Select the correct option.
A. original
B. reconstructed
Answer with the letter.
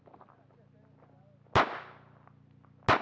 A